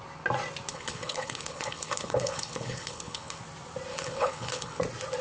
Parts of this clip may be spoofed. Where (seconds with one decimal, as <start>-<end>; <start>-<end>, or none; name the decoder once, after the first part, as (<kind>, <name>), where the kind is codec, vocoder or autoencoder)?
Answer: 0.7-3.4 (codec, HILCodec); 3.9-4.8